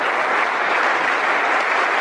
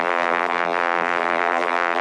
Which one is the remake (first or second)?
second